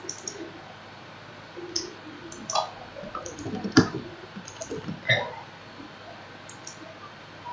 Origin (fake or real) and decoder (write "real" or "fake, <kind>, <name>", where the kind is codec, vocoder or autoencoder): real